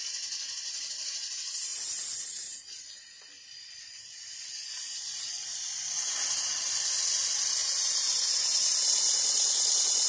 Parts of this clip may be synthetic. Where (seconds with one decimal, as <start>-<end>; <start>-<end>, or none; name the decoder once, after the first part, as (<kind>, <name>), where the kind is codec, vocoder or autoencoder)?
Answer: none